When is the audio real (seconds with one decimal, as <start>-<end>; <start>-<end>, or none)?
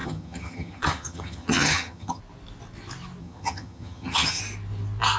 2.2-3.2; 4.4-5.2